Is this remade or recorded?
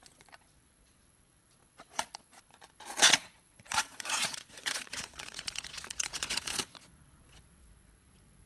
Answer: remade